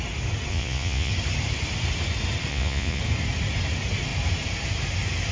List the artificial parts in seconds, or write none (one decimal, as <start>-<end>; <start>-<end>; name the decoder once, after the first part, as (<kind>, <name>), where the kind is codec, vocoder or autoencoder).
0.5-1.1 (vocoder, Vocos); 2.5-3.0